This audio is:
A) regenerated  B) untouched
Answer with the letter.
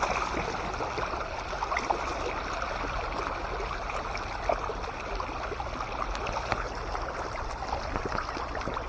B